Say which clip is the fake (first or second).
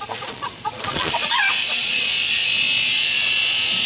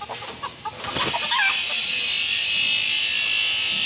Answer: first